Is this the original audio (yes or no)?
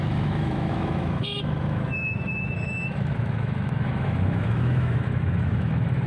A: no